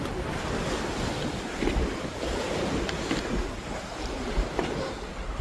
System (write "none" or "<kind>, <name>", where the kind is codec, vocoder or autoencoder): none